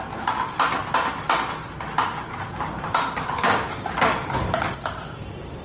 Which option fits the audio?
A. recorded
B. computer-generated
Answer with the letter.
A